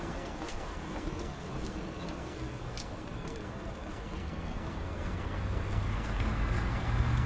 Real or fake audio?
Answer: fake